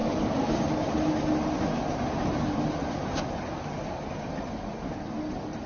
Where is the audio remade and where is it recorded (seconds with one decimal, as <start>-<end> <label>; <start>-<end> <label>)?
0.0-5.7 recorded